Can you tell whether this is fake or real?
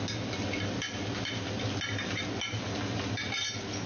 real